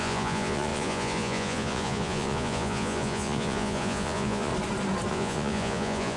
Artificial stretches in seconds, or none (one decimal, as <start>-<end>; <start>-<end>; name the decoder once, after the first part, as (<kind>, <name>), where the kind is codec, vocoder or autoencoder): 0.0-4.5 (vocoder, Vocos); 5.1-6.2